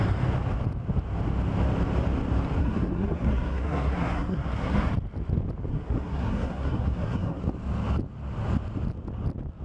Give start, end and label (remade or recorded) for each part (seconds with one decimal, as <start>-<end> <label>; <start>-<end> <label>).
0.0-2.6 recorded; 2.6-4.9 remade; 4.9-5.7 recorded; 5.7-7.4 remade; 7.4-9.6 recorded